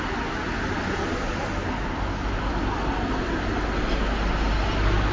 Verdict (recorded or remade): recorded